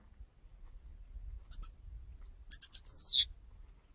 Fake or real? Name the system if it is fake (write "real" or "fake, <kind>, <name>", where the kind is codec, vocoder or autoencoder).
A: real